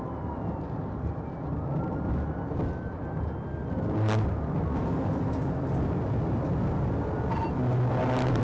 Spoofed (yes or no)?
no